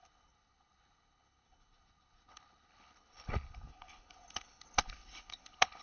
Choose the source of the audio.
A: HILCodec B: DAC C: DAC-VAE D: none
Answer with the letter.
A